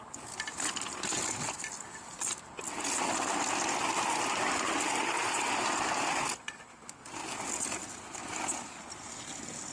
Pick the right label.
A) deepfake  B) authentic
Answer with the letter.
B